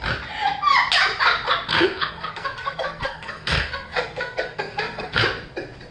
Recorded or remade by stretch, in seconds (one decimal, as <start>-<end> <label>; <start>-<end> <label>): 0.0-1.7 recorded; 1.7-5.2 remade; 5.2-5.9 recorded